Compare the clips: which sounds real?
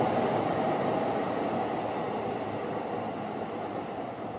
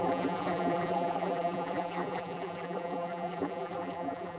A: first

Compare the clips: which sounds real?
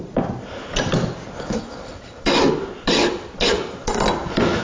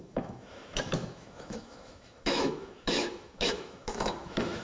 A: first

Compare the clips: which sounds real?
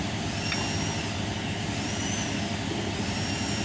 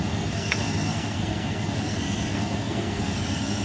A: first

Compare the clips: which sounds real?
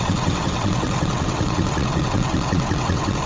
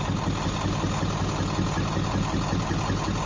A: second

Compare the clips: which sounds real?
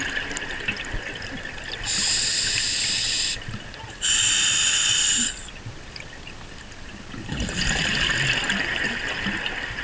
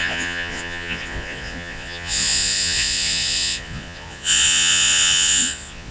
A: first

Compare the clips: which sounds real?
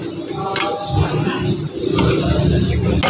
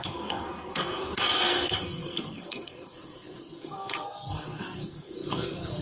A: first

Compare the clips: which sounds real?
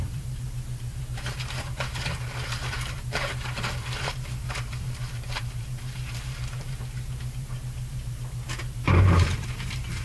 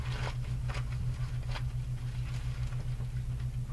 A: second